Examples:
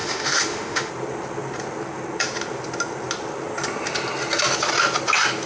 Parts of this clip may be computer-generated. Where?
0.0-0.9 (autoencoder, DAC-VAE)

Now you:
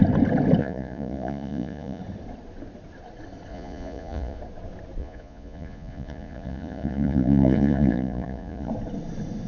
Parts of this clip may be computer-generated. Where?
0.6-2.0 (vocoder, Vocos); 3.5-4.4; 5.0-8.7

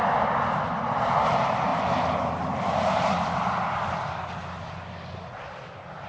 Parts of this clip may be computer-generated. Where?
none

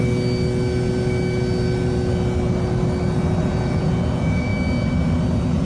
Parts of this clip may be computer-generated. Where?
3.4-4.5 (vocoder, Vocos)

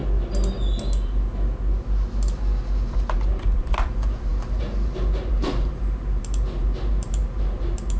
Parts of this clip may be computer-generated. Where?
3.6-8.0 (vocoder, BigVGAN v2)

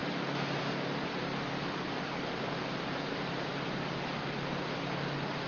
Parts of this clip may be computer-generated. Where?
1.3-4.6 (vocoder, BigVGAN v2)

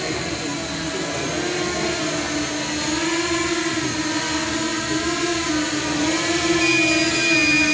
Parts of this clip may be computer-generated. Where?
none

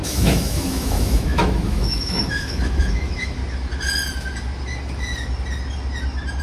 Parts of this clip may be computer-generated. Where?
0.0-3.4 (autoencoder, DAC-VAE)